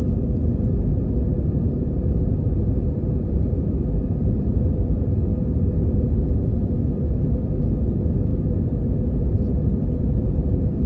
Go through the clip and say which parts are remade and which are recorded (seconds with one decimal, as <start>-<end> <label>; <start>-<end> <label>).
0.0-10.9 recorded